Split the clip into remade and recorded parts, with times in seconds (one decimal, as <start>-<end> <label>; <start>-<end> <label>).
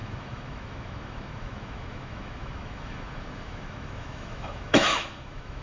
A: 0.0-5.6 remade